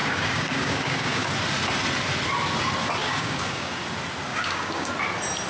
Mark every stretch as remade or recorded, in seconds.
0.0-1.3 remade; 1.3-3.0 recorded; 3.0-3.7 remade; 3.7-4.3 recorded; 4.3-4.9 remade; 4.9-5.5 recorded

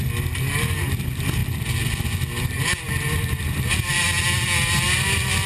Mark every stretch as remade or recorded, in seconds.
0.0-5.5 recorded

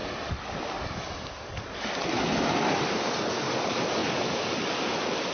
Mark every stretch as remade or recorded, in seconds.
0.0-5.3 recorded

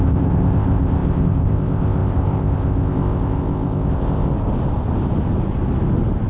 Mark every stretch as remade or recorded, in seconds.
0.0-4.3 remade; 4.3-6.3 recorded